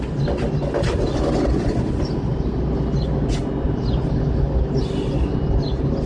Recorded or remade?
recorded